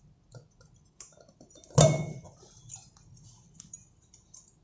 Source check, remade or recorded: recorded